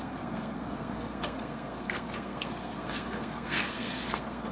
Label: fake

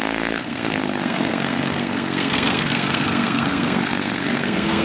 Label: fake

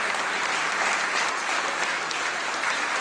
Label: real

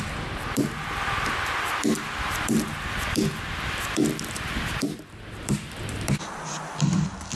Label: real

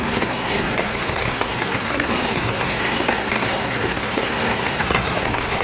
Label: fake